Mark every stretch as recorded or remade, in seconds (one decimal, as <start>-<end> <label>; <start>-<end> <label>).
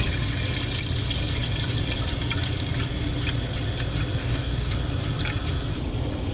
0.0-4.2 recorded; 4.2-4.7 remade; 4.7-6.3 recorded